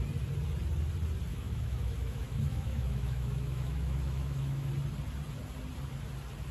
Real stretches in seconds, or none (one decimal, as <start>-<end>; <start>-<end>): 0.0-1.3; 4.7-6.5